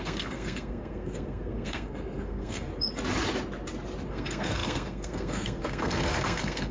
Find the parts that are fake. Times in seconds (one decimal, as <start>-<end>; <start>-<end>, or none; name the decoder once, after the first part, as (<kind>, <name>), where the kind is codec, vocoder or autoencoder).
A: 0.0-2.7 (codec, SNAC); 4.1-6.7